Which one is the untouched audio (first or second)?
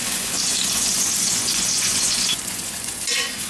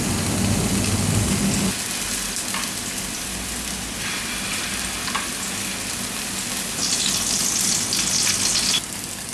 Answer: second